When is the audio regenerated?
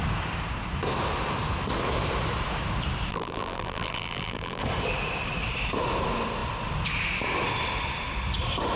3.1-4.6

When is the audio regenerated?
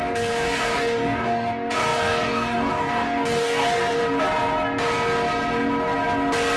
0.0-4.0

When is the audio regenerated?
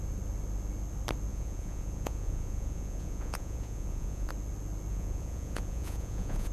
1.3-4.3; 4.9-6.5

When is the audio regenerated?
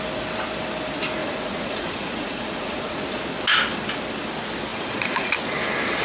1.2-3.0; 4.7-5.4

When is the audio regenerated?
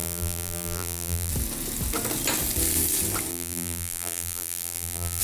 0.0-1.3; 3.3-5.2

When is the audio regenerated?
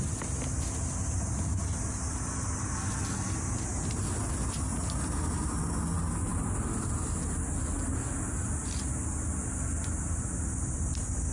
none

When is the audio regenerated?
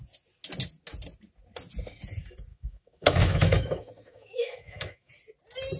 2.5-5.1